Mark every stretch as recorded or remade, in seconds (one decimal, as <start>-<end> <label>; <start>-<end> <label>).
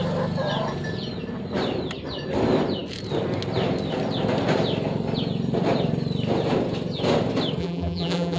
0.0-7.6 recorded; 7.6-8.4 remade